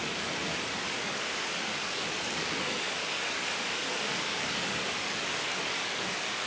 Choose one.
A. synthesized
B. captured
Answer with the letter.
A